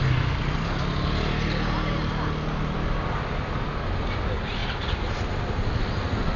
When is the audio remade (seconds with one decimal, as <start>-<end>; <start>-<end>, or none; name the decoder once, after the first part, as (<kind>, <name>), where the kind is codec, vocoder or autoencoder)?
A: none